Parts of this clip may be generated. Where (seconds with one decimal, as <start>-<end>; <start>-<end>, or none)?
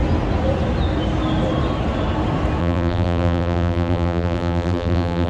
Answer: 2.6-5.3